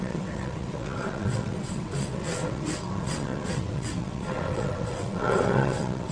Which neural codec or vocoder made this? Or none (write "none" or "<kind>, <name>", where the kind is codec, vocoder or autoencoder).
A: vocoder, WaveNeXt